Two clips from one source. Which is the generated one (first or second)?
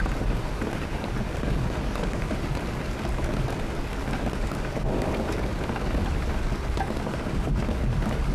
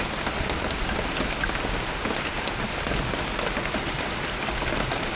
first